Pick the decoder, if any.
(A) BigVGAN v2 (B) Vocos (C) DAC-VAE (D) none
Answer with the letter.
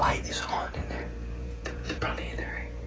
B